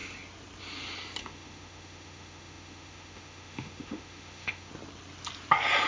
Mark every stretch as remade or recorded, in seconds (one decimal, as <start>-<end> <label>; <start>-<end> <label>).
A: 0.0-1.2 recorded; 1.2-4.7 remade; 4.7-5.9 recorded